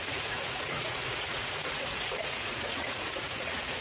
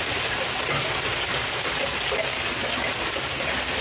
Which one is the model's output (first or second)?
first